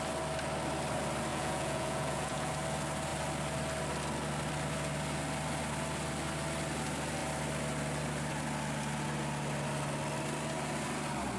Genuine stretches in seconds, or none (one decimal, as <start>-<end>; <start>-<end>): 0.0-1.3; 2.5-11.4